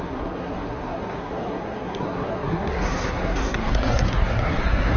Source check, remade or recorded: remade